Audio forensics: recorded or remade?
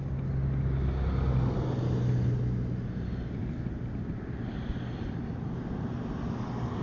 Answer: recorded